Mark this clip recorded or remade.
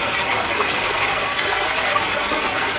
remade